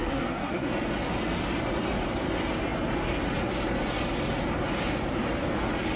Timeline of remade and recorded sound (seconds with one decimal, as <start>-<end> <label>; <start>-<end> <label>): 0.0-0.7 remade; 0.7-6.0 recorded